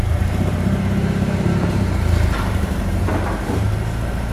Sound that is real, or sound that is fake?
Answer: fake